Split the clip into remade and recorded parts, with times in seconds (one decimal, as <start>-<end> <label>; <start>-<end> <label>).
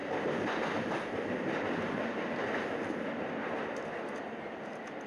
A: 0.0-5.1 recorded